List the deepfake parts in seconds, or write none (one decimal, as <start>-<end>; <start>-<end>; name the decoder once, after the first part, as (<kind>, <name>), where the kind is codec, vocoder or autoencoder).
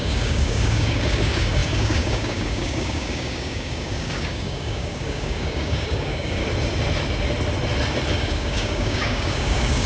0.0-6.4 (codec, DAC); 8.1-9.9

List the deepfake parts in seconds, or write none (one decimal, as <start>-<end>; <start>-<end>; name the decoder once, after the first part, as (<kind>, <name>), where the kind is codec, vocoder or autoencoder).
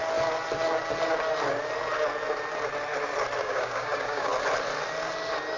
3.4-4.3 (codec, DAC)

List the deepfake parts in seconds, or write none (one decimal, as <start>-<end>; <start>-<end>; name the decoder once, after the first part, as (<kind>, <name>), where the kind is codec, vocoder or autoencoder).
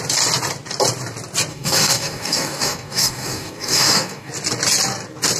1.5-4.3 (codec, DAC)